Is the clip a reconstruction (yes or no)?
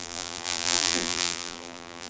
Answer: yes